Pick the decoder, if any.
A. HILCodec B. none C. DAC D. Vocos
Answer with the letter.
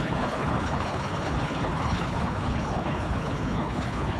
A